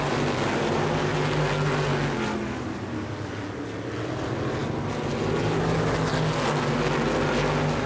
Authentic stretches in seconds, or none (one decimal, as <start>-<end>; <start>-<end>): 0.0-7.9